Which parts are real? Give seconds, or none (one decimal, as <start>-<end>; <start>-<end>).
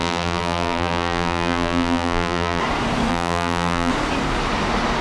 2.6-3.1; 3.9-5.0